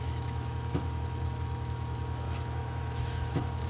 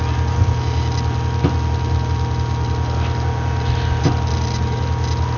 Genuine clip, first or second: second